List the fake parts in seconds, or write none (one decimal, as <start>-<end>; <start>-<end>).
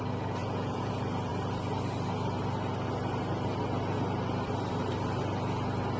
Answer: 0.4-0.9